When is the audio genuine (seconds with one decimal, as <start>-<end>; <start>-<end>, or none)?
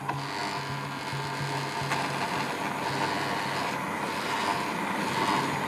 0.0-5.7